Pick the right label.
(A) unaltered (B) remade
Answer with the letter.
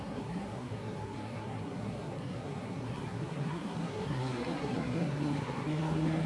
B